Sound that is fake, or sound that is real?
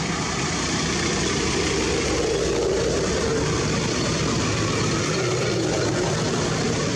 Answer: fake